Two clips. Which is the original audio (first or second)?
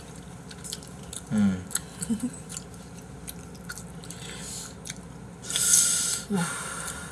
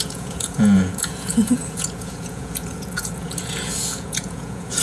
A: first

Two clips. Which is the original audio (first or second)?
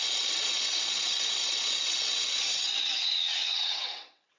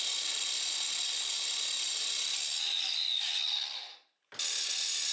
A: second